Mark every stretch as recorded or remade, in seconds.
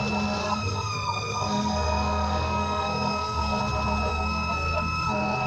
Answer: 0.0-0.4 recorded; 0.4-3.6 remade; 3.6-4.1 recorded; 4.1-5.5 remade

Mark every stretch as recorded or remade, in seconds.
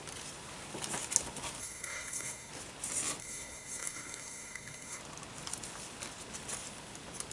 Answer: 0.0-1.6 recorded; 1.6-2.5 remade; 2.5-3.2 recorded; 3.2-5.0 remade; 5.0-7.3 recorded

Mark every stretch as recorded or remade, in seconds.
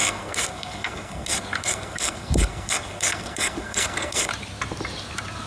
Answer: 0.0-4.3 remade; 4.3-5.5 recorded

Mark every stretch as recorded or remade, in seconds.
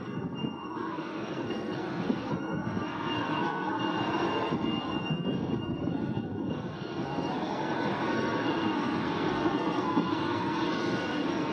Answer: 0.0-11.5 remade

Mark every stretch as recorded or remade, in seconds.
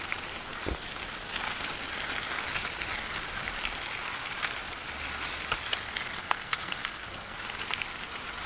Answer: 0.0-6.2 recorded; 6.2-7.4 remade; 7.4-8.5 recorded